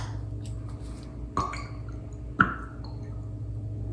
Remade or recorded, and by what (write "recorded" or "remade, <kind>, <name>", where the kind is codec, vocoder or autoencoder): recorded